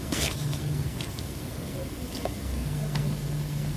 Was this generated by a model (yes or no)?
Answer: yes